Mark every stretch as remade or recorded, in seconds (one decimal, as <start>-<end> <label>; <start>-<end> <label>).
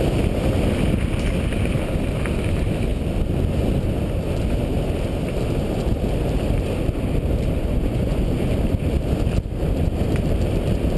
0.0-7.6 recorded; 7.6-8.5 remade; 8.5-11.0 recorded